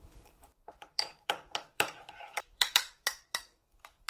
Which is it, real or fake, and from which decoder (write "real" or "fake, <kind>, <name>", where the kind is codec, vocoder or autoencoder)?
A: fake, codec, DAC